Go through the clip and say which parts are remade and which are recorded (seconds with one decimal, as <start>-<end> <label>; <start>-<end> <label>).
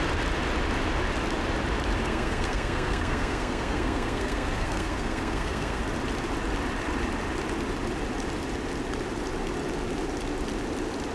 0.0-2.0 recorded; 2.0-5.8 remade; 5.8-11.1 recorded